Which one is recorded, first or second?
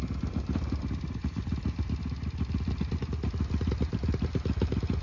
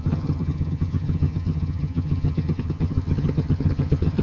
first